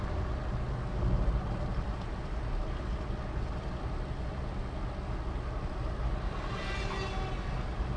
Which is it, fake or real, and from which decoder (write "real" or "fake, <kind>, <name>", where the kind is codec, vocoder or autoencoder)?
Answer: real